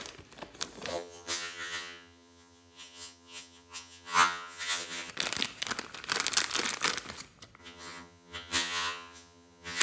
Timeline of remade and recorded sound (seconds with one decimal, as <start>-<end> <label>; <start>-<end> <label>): 0.0-0.9 recorded; 0.9-5.1 remade; 5.1-7.6 recorded; 7.6-9.8 remade